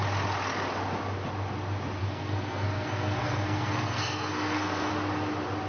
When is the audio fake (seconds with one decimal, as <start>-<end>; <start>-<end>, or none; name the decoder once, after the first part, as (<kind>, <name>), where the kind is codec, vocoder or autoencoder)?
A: 2.0-4.9 (codec, SNAC)